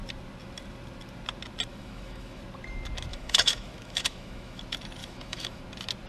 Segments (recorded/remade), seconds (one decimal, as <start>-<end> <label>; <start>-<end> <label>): 0.0-1.7 recorded; 1.7-2.4 remade; 2.4-3.1 recorded; 3.1-4.6 remade; 4.6-5.0 recorded; 5.0-5.6 remade; 5.6-6.1 recorded